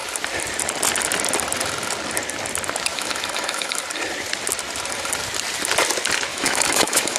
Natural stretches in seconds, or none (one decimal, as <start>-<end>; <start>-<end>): 0.0-2.9; 3.8-6.3